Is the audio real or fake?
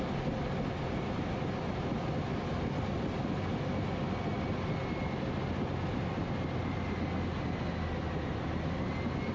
real